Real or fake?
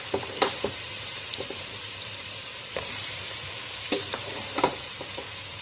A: fake